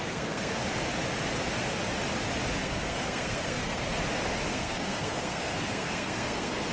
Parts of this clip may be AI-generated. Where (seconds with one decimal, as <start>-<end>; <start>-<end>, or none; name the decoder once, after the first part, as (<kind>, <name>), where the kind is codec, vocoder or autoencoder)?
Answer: 0.0-0.6 (codec, SNAC); 2.6-3.9; 4.5-6.7